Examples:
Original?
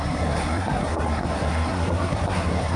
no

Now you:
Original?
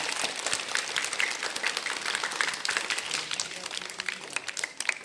yes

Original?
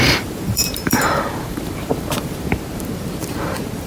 no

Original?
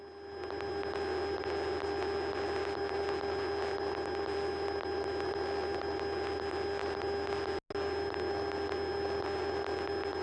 yes